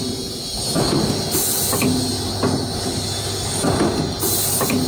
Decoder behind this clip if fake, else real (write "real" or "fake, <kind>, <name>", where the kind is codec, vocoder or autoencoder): real